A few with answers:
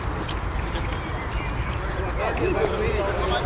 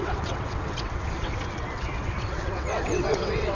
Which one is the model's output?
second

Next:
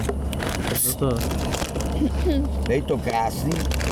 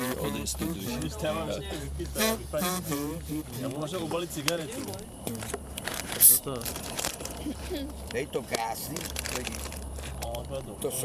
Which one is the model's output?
second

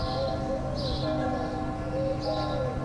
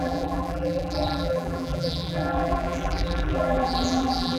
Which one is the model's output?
second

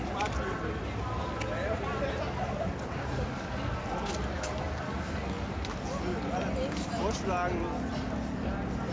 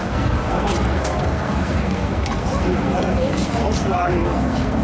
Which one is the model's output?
second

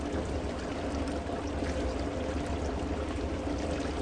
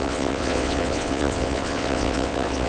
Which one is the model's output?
second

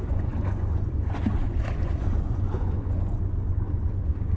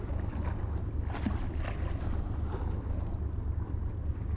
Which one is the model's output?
first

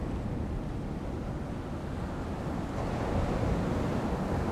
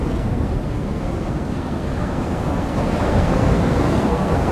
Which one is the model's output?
second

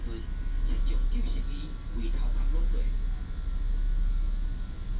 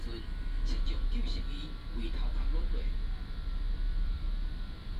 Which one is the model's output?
second